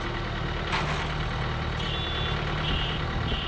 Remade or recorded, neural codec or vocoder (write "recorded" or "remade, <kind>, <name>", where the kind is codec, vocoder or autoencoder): recorded